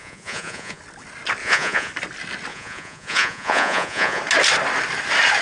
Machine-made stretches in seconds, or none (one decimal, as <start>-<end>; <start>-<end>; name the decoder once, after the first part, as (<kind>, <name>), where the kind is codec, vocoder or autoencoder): 0.0-0.8 (vocoder, Vocos); 1.4-1.9; 2.5-4.2